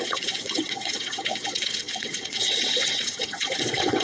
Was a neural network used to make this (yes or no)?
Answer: yes